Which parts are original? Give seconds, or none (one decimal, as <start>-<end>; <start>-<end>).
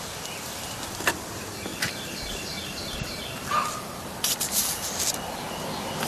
0.0-1.7; 5.4-6.1